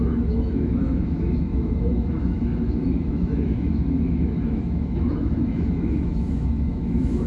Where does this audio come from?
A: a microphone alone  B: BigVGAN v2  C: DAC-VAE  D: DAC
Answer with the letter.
C